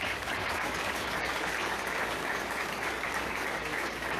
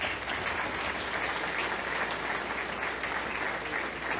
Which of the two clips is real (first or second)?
second